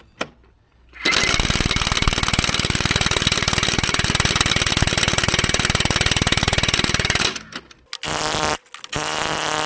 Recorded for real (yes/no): yes